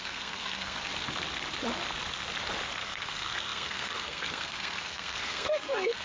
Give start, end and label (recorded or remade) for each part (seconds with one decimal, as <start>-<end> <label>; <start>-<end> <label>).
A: 0.0-0.9 remade; 0.9-2.8 recorded; 2.8-6.0 remade